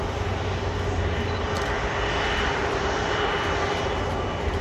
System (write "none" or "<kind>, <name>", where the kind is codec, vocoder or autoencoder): none